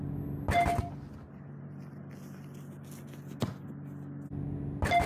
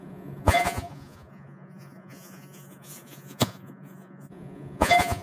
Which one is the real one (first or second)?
first